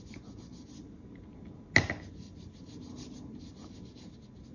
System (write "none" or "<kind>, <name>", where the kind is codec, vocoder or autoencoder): none